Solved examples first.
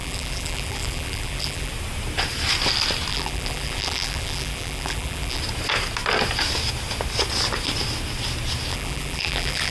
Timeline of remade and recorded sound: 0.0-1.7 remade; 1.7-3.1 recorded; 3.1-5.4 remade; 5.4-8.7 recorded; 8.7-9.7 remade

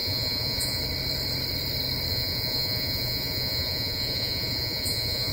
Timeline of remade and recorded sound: 0.0-0.8 remade; 0.8-2.1 recorded; 2.1-5.3 remade

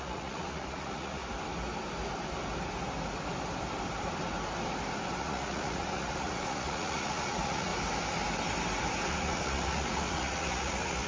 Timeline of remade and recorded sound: 0.0-1.2 remade; 1.2-5.2 recorded; 5.2-7.7 remade; 7.7-9.1 recorded; 9.1-11.1 remade

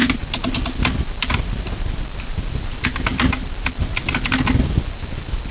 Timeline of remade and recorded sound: 0.0-5.5 recorded

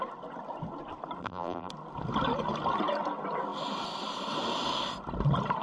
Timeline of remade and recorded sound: 0.0-1.2 recorded; 1.2-1.7 remade; 1.7-5.6 recorded

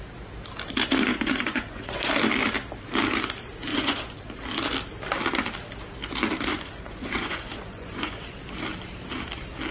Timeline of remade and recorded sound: 0.0-1.1 recorded; 1.1-2.1 remade; 2.1-3.7 recorded; 3.7-4.3 remade; 4.3-6.5 recorded; 6.5-8.4 remade; 8.4-9.7 recorded